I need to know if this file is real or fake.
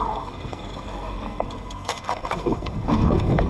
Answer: fake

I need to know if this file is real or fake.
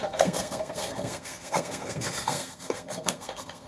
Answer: fake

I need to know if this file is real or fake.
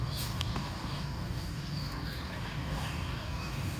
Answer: fake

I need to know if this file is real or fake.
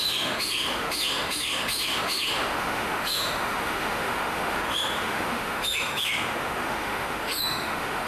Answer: fake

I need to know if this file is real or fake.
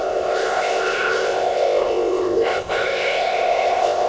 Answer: fake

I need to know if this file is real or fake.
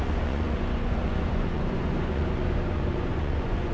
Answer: fake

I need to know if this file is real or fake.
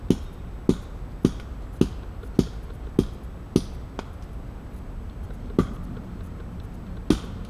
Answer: real